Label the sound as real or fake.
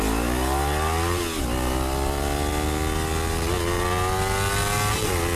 real